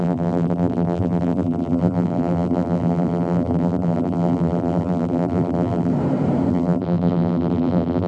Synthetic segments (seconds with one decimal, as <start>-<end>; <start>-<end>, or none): 0.0-5.9; 6.5-8.1